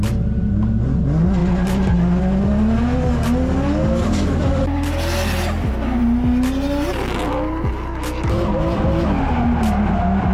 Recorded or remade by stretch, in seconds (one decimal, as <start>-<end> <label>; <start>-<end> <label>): 0.0-10.3 recorded